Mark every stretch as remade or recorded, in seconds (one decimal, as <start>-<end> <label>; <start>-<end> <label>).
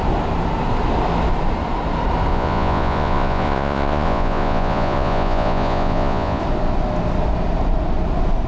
0.0-2.3 recorded; 2.3-6.4 remade; 6.4-8.5 recorded